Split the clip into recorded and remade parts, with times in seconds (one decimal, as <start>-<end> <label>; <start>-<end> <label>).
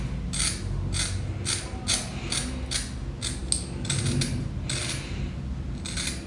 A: 0.0-6.3 recorded